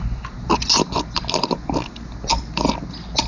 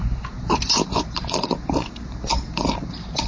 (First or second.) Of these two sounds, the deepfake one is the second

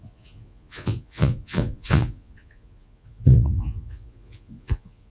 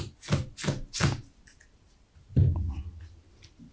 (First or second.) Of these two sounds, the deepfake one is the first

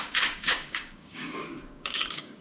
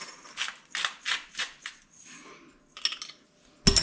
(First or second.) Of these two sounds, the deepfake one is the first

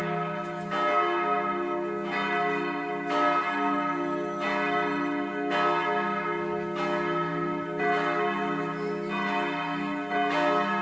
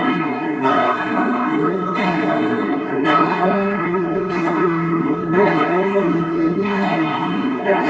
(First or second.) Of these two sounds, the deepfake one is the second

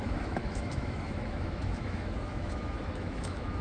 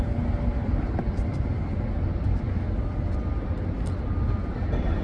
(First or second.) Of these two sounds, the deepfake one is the first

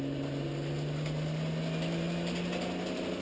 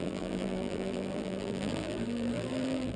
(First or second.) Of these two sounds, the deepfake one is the second